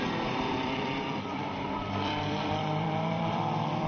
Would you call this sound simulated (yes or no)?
yes